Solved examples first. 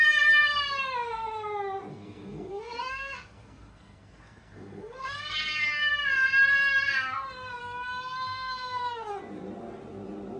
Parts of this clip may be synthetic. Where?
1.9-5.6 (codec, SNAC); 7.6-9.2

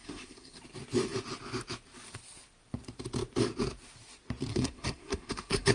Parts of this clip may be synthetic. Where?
0.0-0.6 (codec, SNAC); 4.5-5.7

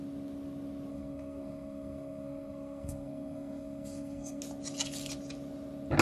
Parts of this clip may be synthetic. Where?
0.9-4.4 (codec, SNAC)